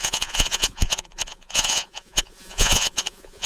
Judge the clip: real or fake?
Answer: fake